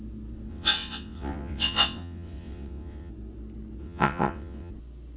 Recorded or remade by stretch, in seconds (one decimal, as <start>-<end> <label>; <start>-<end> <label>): 0.0-0.5 recorded; 0.5-3.1 remade; 3.1-3.8 recorded; 3.8-4.7 remade; 4.7-5.2 recorded